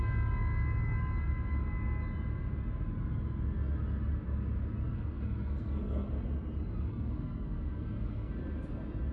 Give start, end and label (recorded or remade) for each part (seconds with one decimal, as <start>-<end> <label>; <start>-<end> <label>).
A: 0.0-4.8 recorded; 4.8-6.1 remade; 6.1-6.9 recorded; 6.9-8.3 remade; 8.3-9.1 recorded